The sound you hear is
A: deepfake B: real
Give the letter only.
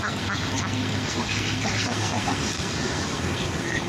A